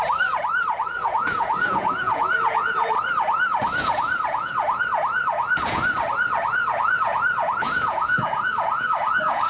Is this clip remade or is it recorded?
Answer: remade